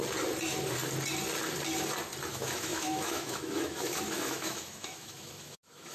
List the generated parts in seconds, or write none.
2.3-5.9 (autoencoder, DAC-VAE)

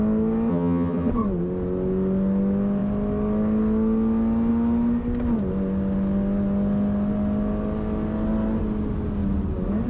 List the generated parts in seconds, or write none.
0.5-1.1 (vocoder, HiFi-GAN)

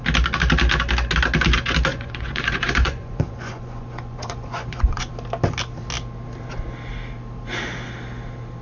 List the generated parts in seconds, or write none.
1.9-5.1 (vocoder, Vocos)

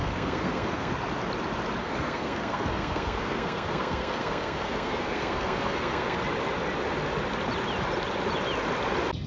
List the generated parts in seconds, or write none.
0.0-0.9 (codec, SNAC); 1.8-6.2